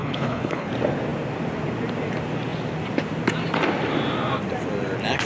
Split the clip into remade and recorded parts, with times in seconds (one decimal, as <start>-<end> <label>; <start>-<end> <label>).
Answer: 0.0-0.7 remade; 0.7-5.3 recorded